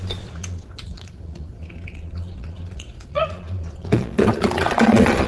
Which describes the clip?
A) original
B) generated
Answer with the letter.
B